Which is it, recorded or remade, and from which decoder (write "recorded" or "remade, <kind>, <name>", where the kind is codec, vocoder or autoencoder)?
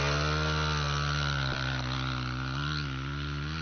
recorded